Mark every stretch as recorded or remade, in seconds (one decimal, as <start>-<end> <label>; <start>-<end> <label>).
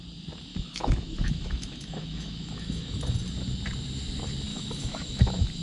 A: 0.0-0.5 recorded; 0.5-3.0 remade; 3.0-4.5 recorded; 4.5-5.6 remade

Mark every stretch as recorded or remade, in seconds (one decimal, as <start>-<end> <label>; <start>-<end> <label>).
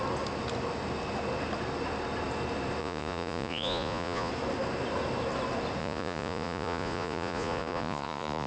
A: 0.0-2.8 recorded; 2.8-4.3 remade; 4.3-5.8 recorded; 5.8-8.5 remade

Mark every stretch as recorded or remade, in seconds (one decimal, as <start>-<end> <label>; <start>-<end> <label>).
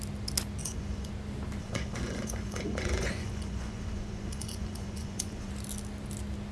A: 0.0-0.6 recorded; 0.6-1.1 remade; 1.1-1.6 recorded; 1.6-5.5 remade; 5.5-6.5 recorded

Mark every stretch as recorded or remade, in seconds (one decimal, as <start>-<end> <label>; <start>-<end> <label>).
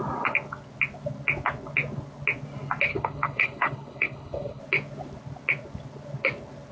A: 0.0-2.9 recorded; 2.9-4.6 remade; 4.6-6.7 recorded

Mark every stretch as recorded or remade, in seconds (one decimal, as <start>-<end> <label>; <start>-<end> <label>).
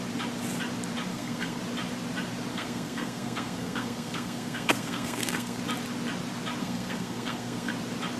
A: 0.0-1.1 recorded; 1.1-1.6 remade; 1.6-2.5 recorded; 2.5-5.6 remade; 5.6-6.6 recorded; 6.6-7.7 remade; 7.7-8.2 recorded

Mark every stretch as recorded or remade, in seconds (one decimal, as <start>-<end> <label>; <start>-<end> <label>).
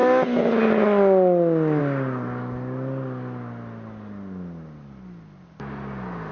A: 0.0-6.3 recorded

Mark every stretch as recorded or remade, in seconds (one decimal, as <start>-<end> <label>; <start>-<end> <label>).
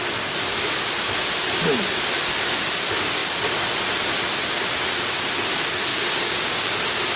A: 0.0-5.9 recorded; 5.9-6.7 remade; 6.7-7.2 recorded